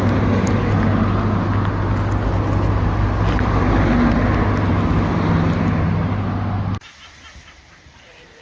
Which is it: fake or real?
real